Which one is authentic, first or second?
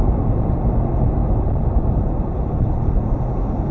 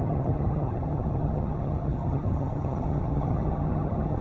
first